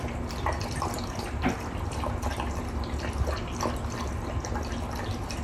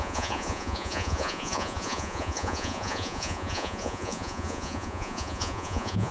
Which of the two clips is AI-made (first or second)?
second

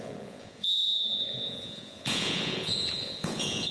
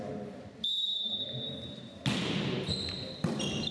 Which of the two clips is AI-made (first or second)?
first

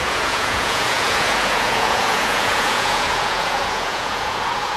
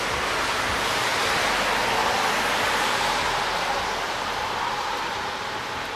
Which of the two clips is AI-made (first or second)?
first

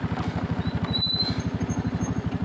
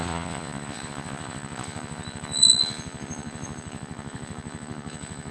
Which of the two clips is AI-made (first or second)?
second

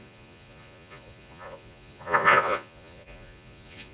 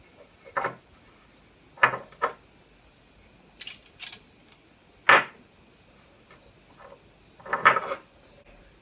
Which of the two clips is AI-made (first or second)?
first